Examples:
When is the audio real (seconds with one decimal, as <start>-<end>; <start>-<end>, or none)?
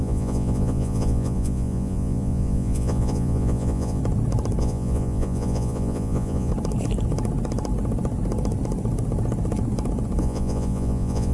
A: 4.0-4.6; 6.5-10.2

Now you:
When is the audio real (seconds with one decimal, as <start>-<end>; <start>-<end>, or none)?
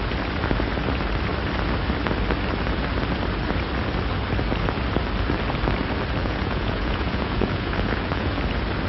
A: 0.0-6.2; 8.3-8.9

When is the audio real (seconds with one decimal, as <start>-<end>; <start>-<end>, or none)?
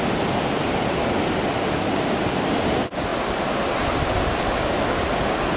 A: 0.0-5.6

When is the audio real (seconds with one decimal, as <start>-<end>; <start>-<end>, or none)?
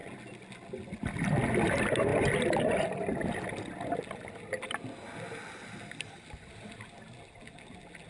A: 0.0-8.1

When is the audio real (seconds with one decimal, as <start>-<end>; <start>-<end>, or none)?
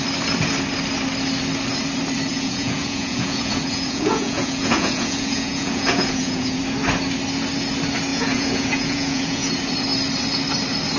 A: 0.0-2.3; 6.6-8.1; 9.5-11.0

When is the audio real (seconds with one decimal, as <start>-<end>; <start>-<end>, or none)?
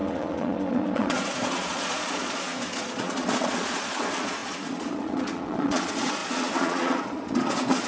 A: none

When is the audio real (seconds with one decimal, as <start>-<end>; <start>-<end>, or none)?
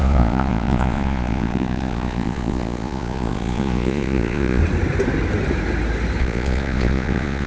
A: 4.6-6.2